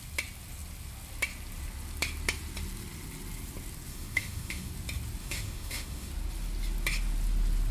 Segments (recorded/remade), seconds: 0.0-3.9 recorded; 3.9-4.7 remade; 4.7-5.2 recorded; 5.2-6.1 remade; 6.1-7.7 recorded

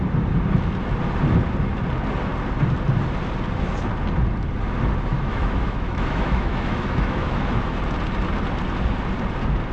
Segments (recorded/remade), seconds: 0.0-5.1 recorded; 5.1-7.8 remade; 7.8-9.7 recorded

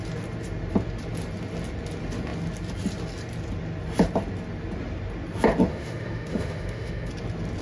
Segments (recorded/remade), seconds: 0.0-5.7 recorded; 5.7-7.1 remade; 7.1-7.6 recorded